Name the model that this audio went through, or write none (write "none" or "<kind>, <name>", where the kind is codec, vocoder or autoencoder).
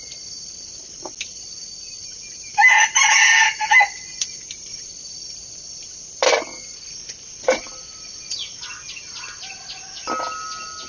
none